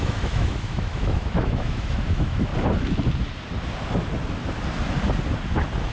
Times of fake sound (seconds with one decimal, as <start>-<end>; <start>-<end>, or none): 0.0-2.5